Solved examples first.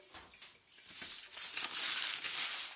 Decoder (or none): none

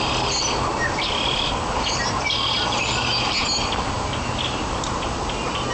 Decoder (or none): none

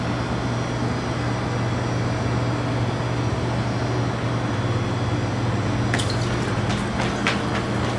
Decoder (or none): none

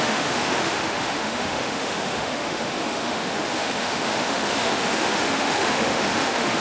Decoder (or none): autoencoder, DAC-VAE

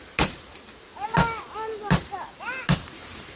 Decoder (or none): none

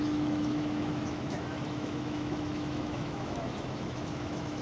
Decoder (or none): autoencoder, DAC-VAE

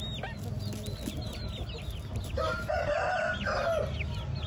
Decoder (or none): none